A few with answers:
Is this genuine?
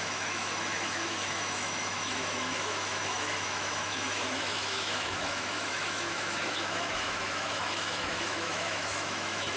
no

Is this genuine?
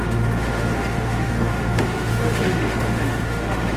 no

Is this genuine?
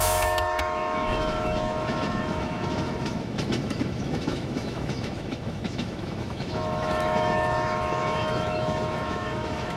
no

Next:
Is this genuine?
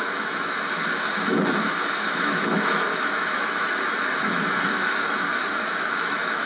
no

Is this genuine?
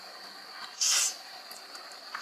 yes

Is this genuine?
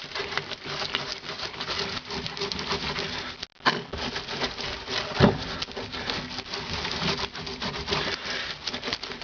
yes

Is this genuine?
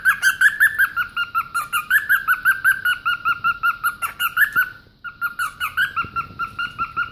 yes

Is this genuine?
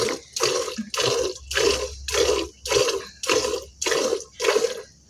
yes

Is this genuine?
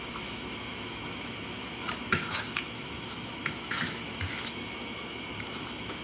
no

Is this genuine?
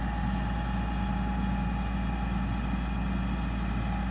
yes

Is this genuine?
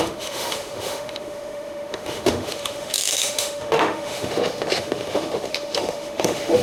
no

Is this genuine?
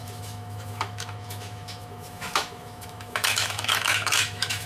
no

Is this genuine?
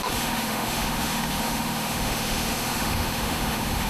no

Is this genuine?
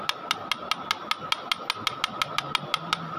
yes